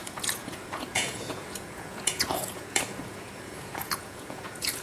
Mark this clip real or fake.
fake